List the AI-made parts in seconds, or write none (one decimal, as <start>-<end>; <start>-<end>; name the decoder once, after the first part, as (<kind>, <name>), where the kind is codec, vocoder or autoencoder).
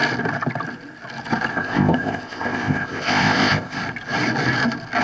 1.5-3.8 (codec, ZipCodec)